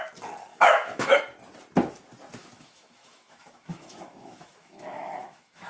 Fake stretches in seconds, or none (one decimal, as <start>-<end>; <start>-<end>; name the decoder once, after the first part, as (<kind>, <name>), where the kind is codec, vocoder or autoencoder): 0.5-1.2 (autoencoder, DAC-VAE); 2.4-5.7